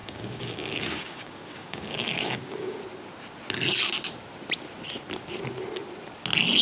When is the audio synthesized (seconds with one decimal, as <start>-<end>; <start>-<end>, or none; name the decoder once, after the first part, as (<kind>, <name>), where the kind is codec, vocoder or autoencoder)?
0.0-2.8 (codec, DAC)

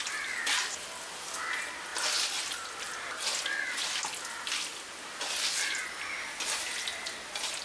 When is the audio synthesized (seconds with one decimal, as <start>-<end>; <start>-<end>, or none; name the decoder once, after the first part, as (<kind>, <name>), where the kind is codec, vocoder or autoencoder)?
none

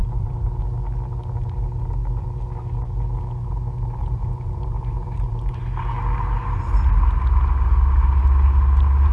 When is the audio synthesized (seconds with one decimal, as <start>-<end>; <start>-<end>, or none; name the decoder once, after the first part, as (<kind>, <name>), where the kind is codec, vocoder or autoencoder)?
0.0-0.6 (vocoder, BigVGAN v2); 4.0-5.5